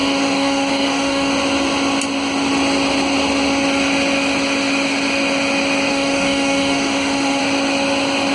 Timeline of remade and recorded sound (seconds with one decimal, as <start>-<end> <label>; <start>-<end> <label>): 0.0-1.3 remade; 1.3-5.9 recorded; 5.9-7.4 remade; 7.4-8.3 recorded